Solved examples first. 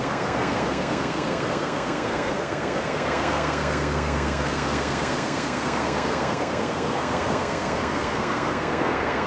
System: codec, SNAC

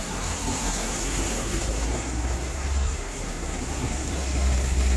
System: codec, SNAC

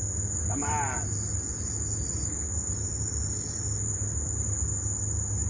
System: none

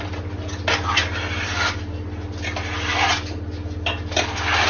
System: none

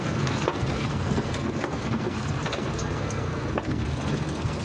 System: codec, SNAC